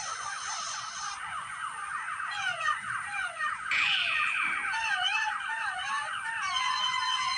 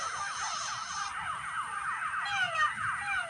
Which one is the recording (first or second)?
second